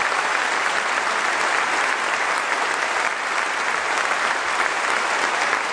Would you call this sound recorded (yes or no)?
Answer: yes